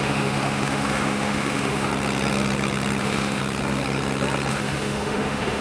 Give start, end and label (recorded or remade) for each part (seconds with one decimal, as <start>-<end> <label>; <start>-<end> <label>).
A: 0.0-1.9 remade; 1.9-3.0 recorded; 3.0-3.4 remade; 3.4-4.5 recorded; 4.5-5.6 remade